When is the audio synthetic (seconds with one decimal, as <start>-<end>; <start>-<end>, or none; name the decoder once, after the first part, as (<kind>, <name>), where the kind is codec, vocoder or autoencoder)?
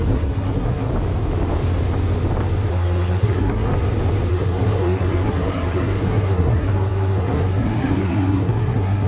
0.0-0.9 (codec, SNAC); 2.7-3.7; 4.3-9.1